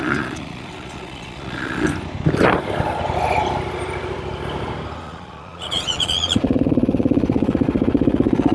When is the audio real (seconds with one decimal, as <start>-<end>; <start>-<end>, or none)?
1.9-5.0